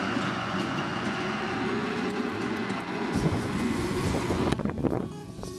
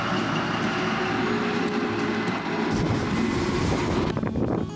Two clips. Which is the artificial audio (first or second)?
first